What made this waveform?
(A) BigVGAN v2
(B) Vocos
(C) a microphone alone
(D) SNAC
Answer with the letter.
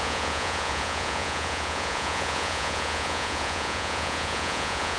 B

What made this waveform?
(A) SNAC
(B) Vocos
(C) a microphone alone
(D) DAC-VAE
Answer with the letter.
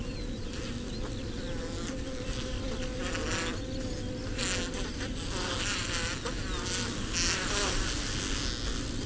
C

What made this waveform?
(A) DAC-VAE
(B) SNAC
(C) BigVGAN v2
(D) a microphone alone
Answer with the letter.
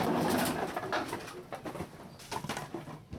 D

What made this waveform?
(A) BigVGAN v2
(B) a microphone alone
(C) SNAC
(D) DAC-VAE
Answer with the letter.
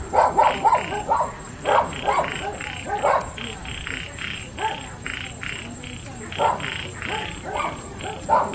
B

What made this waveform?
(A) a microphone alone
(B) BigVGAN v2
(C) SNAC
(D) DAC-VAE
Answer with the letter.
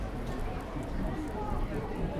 A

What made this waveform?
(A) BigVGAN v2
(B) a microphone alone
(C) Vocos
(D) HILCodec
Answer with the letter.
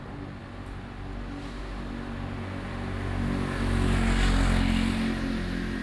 B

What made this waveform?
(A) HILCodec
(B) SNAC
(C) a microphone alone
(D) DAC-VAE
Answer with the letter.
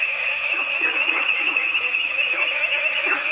D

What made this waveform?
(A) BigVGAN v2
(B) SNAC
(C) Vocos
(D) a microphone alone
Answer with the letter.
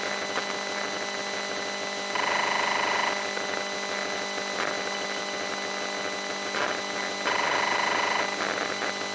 D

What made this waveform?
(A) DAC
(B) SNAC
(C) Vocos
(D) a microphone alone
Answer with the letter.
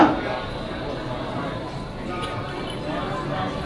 D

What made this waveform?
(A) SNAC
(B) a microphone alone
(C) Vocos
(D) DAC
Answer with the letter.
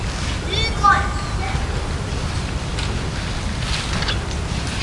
B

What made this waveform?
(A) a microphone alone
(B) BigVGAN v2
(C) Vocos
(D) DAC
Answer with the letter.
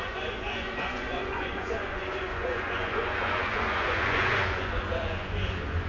C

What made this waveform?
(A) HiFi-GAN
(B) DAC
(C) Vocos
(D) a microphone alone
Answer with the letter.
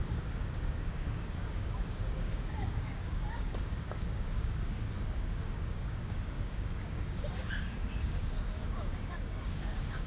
B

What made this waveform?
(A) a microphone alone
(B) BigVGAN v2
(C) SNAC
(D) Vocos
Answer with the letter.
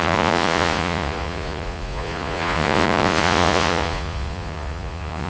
D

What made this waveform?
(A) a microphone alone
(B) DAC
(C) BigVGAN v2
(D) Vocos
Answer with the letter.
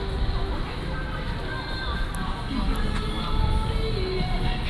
A